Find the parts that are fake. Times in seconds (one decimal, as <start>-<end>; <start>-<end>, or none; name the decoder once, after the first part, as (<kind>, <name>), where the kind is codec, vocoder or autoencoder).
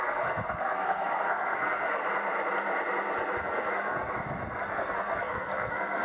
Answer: 0.0-2.0 (codec, SNAC); 3.4-4.0; 4.7-6.0